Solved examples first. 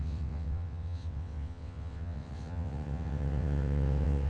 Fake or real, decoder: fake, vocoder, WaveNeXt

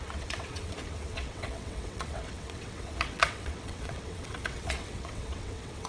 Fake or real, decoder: fake, vocoder, WaveNeXt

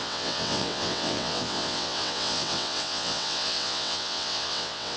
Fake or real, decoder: fake, vocoder, WaveNeXt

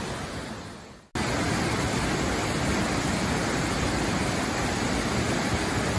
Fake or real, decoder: real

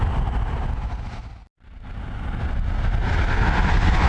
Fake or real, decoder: real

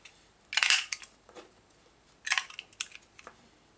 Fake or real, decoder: real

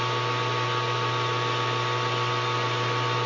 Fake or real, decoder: real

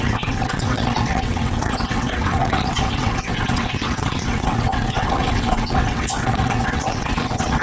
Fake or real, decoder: fake, vocoder, WaveNeXt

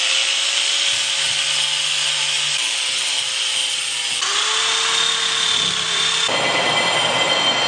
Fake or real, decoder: real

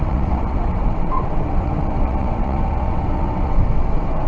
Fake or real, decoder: fake, vocoder, WaveNeXt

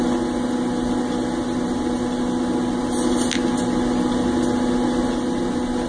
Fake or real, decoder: real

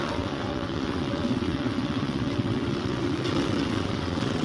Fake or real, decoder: fake, vocoder, WaveNeXt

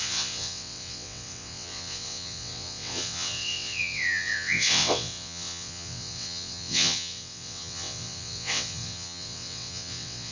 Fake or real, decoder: fake, vocoder, WaveNeXt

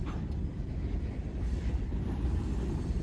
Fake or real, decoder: real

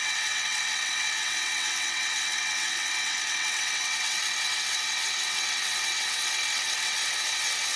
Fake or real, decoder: fake, vocoder, WaveNeXt